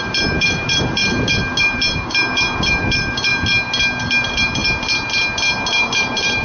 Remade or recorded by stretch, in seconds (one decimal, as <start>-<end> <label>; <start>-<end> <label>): 0.0-1.0 remade; 1.0-1.6 recorded; 1.6-3.3 remade; 3.3-4.0 recorded; 4.0-4.6 remade; 4.6-6.0 recorded; 6.0-6.4 remade